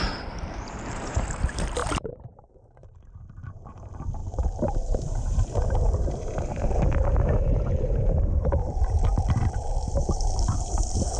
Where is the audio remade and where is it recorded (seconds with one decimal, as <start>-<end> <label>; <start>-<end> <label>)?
0.0-11.2 remade